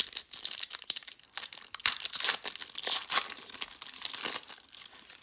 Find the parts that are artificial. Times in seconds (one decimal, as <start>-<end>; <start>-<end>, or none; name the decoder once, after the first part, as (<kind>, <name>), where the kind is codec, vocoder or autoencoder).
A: none